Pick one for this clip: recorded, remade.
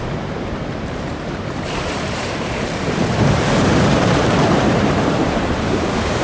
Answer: remade